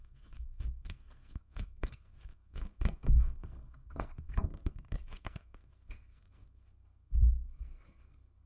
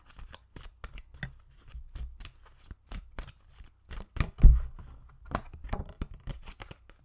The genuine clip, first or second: second